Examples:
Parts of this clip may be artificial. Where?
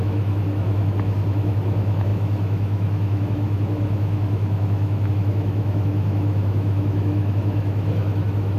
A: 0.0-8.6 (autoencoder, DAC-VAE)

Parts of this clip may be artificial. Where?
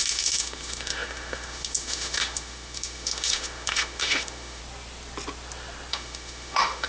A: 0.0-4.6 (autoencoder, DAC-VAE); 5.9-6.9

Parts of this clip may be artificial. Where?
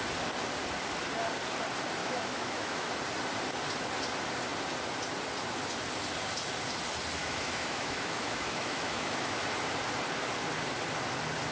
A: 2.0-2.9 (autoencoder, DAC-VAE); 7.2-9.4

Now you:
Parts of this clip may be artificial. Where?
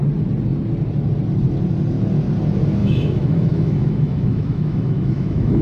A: 2.8-5.6 (autoencoder, DAC-VAE)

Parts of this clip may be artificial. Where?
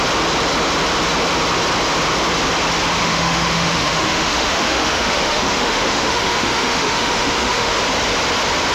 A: 3.0-7.8 (autoencoder, DAC-VAE)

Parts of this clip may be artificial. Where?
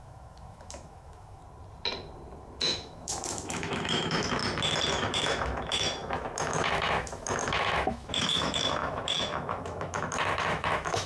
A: 0.0-1.4 (autoencoder, DAC-VAE); 2.6-4.4; 4.9-11.1